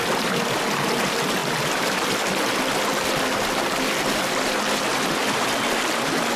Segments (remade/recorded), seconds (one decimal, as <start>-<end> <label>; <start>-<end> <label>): 0.0-6.4 recorded